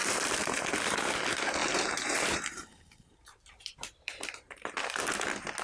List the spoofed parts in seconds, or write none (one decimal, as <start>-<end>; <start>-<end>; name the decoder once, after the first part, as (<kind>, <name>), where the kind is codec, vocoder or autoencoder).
0.0-1.1 (vocoder, BigVGAN v2); 1.6-5.0